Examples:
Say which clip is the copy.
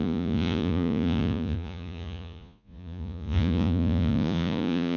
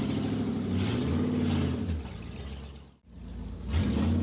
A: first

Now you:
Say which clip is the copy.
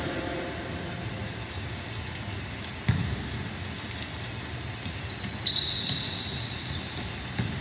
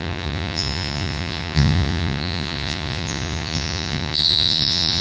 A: second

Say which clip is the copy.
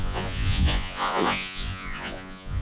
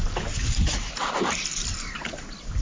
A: first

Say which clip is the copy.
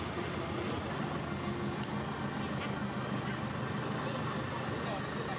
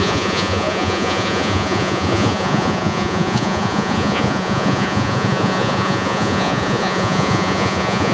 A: second